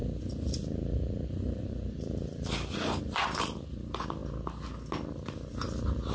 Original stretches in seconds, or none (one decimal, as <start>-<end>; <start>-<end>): 4.2-6.1